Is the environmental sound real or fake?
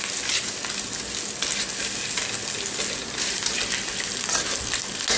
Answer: real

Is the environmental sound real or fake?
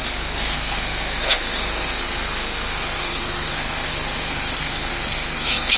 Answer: fake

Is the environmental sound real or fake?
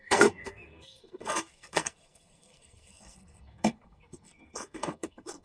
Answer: fake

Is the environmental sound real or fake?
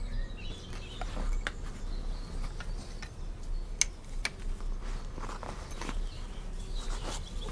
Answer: real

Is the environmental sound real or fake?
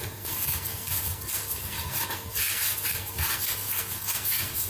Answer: fake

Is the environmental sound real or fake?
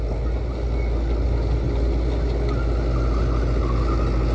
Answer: real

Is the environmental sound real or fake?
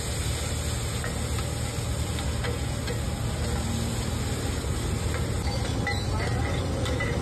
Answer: real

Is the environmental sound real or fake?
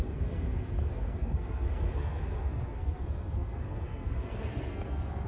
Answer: fake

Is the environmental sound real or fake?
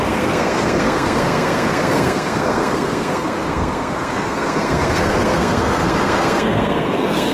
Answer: fake